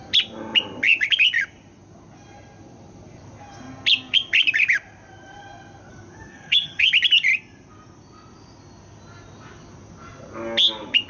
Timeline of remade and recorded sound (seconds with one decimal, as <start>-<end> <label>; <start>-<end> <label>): 0.0-6.3 recorded; 6.3-6.9 remade; 6.9-11.1 recorded